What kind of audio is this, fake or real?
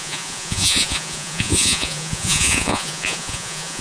fake